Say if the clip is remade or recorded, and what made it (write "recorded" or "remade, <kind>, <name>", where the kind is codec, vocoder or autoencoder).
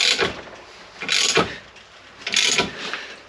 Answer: recorded